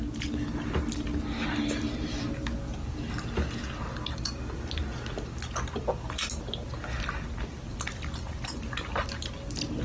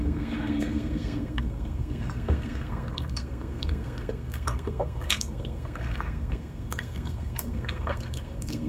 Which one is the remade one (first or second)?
second